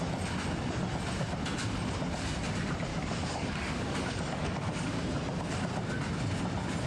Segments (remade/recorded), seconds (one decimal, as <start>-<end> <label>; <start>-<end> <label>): 0.0-2.9 recorded; 2.9-5.0 remade; 5.0-6.9 recorded